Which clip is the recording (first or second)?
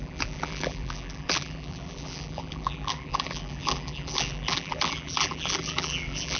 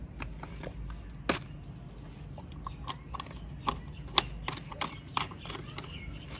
second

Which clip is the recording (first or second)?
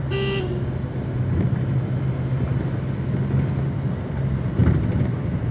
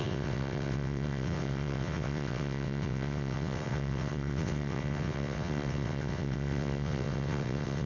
first